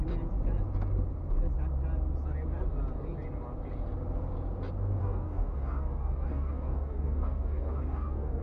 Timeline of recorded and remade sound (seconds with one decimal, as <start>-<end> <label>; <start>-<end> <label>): 0.0-5.0 recorded; 5.0-8.4 remade